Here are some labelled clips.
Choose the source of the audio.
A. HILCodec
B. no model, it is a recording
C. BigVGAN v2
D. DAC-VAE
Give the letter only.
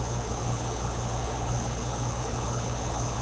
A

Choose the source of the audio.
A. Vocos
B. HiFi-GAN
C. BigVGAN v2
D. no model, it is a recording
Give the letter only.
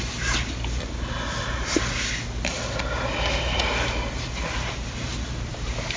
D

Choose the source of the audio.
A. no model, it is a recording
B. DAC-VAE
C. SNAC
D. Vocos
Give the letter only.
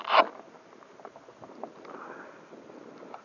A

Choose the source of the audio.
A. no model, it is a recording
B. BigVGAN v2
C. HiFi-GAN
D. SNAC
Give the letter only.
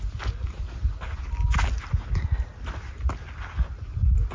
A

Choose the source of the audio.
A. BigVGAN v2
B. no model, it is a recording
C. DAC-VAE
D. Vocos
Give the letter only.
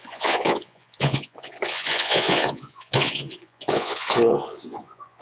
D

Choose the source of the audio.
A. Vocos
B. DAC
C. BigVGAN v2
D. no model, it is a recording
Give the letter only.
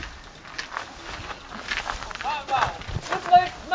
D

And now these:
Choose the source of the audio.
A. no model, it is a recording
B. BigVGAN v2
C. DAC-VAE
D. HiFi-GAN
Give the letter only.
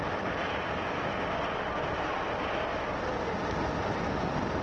A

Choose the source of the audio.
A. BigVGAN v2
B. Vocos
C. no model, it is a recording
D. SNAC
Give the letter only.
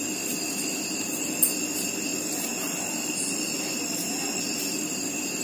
C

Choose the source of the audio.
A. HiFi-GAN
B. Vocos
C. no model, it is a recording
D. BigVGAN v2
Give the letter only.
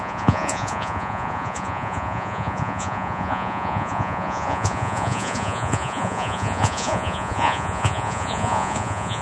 B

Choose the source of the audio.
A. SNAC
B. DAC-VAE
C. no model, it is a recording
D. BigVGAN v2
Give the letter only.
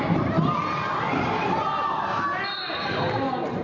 C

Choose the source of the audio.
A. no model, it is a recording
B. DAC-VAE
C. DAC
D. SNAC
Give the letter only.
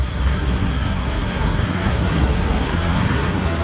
D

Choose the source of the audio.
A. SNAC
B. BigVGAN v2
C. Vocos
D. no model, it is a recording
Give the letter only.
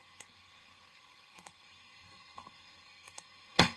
A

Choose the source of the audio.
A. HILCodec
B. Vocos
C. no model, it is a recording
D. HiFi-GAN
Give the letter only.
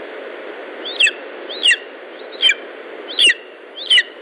C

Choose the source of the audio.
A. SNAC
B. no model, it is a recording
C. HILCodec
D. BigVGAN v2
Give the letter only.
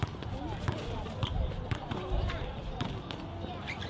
B